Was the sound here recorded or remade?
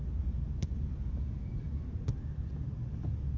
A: recorded